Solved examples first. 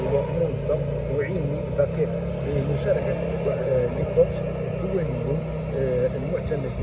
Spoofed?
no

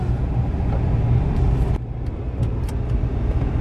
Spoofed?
no